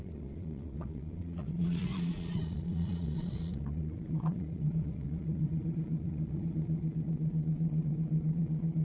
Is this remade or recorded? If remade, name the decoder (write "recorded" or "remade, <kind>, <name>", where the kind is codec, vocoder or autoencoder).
remade, vocoder, Vocos